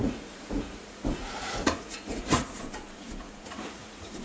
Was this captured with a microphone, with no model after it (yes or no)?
no